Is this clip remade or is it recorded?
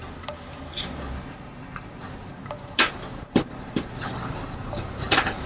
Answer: remade